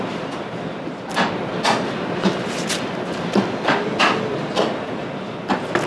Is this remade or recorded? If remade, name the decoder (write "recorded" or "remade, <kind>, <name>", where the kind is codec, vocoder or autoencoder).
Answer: recorded